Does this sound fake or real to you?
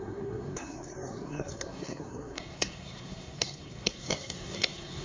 fake